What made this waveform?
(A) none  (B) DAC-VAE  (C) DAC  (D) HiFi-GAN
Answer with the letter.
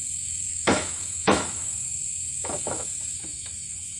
B